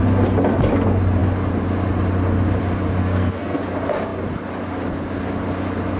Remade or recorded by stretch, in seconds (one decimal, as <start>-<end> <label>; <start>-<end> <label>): 0.0-3.0 recorded; 3.0-3.6 remade; 3.6-6.0 recorded